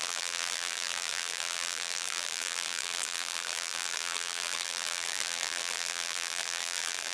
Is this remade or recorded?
remade